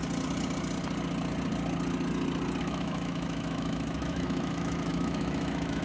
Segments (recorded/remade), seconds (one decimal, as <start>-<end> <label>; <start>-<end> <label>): 0.0-2.6 recorded; 2.6-5.8 remade